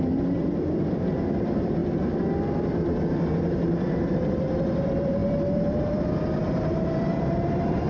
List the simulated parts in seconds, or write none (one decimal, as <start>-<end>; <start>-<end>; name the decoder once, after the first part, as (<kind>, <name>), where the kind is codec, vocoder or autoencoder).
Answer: 0.0-1.8 (vocoder, BigVGAN v2); 3.5-7.9